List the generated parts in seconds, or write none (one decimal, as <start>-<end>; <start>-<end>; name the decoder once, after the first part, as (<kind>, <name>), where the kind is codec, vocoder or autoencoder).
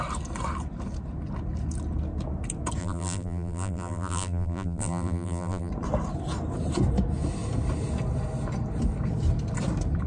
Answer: 2.8-5.7 (vocoder, BigVGAN v2)